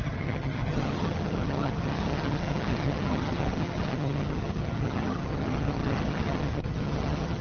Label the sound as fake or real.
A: fake